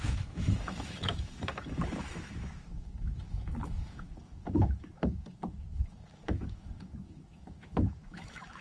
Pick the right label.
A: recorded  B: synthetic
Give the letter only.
B